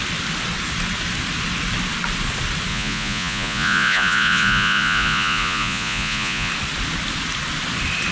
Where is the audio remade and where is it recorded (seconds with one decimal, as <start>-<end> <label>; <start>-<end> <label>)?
0.0-2.7 recorded; 2.7-6.5 remade; 6.5-8.1 recorded